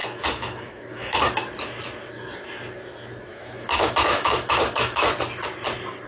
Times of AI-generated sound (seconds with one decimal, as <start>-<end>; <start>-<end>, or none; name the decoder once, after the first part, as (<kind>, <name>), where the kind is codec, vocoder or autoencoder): 0.0-1.2 (autoencoder, DAC-VAE); 3.3-5.1